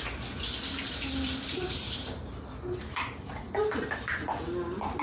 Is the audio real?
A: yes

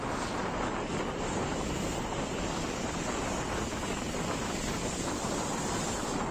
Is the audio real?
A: yes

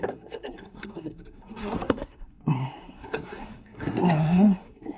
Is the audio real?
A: no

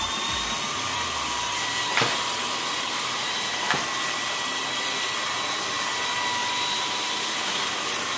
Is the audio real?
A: no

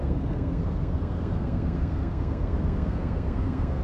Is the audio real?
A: no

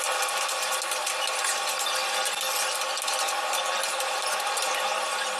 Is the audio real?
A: yes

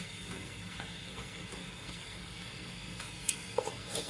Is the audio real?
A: no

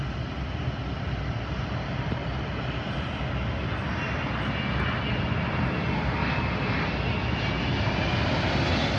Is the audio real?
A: yes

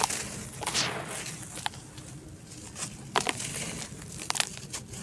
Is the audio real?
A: yes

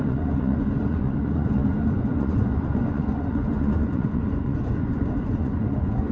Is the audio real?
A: no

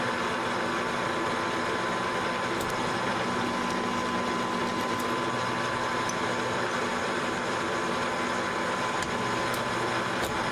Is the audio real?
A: yes